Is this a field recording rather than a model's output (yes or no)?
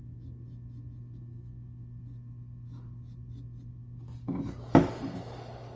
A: yes